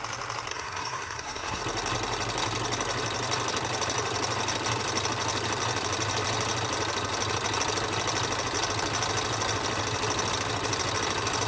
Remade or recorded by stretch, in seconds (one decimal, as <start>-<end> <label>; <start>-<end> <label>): 0.0-0.5 recorded; 0.5-1.6 remade; 1.6-11.5 recorded